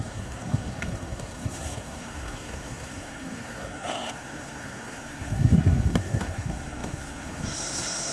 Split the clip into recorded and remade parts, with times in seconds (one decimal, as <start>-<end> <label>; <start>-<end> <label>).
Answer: 0.0-8.1 remade